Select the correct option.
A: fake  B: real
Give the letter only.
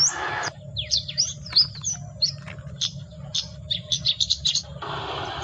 B